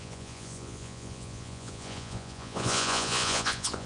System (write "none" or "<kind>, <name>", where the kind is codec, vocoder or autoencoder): vocoder, Vocos